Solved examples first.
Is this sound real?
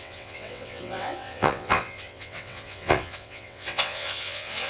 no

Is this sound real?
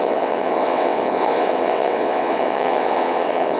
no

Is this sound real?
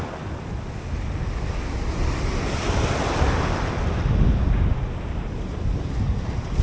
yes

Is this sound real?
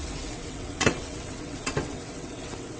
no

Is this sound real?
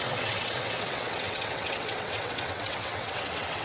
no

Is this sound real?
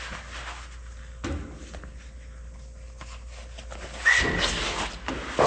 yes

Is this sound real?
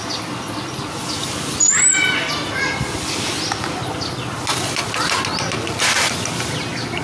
yes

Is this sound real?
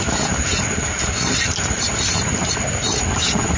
yes